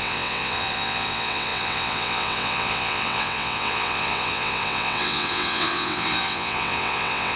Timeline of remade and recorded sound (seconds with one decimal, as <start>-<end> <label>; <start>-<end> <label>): 0.0-7.4 remade